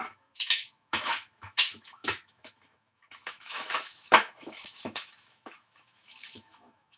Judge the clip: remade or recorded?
remade